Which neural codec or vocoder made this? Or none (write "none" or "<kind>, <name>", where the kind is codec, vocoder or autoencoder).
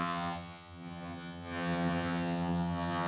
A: vocoder, HiFi-GAN